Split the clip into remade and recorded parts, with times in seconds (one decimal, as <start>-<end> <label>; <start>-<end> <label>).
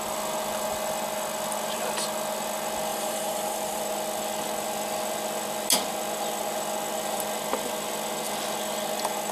0.0-2.9 recorded; 2.9-3.8 remade; 3.8-9.3 recorded